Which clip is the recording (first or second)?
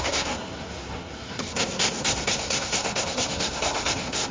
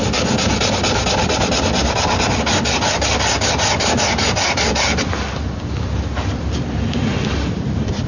second